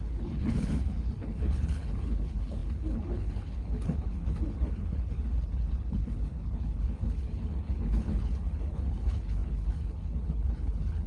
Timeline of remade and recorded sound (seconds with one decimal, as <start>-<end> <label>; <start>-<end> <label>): 0.0-11.1 remade